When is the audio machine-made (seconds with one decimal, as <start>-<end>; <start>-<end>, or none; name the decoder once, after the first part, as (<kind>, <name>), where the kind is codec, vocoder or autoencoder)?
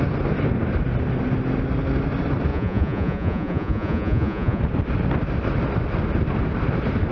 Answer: 2.5-4.6 (vocoder, Vocos)